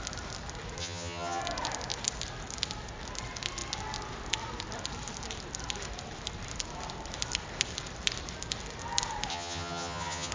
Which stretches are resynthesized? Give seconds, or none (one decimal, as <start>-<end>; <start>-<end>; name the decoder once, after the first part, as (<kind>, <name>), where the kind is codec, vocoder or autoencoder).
0.8-1.4 (vocoder, HiFi-GAN); 9.3-10.3